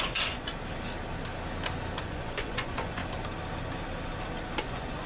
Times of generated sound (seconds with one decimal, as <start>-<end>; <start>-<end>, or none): 0.0-0.5; 2.0-3.0; 4.6-5.1